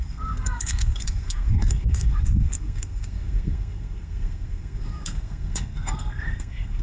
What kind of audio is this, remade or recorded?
remade